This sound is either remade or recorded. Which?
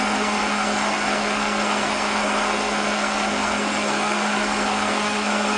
remade